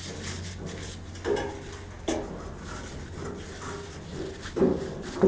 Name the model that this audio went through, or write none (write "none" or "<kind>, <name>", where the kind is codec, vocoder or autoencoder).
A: none